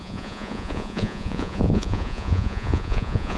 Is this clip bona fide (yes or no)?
no